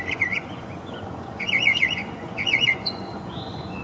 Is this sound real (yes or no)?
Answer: no